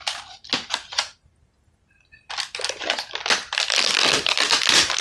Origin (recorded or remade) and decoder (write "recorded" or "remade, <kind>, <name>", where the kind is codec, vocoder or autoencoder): recorded